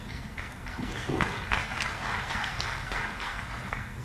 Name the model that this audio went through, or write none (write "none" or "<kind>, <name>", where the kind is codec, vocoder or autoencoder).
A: codec, SNAC